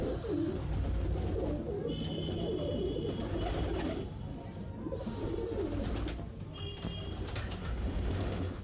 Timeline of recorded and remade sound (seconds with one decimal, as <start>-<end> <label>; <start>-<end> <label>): 0.0-7.6 recorded; 7.6-8.6 remade